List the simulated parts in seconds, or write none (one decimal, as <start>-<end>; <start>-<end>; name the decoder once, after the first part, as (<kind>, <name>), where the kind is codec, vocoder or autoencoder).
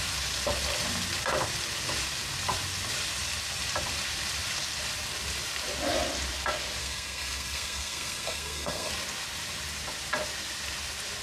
6.8-8.9 (codec, SNAC)